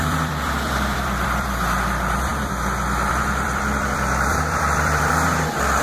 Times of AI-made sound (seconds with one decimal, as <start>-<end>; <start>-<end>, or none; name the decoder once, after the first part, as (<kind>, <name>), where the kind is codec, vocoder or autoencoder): 0.0-5.8 (vocoder, BigVGAN v2)